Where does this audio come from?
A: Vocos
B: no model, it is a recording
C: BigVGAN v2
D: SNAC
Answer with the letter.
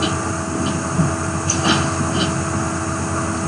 B